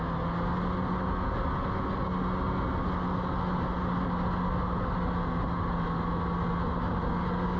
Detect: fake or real real